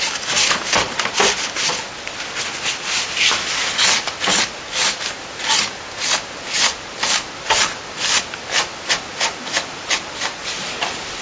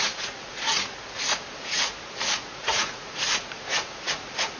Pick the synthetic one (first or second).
second